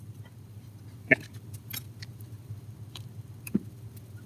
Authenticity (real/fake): fake